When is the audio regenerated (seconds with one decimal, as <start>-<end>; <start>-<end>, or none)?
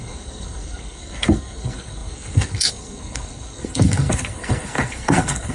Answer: 0.0-5.5